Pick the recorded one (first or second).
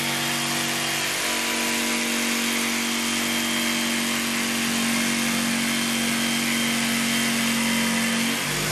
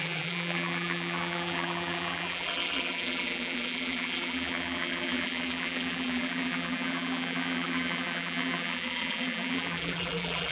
first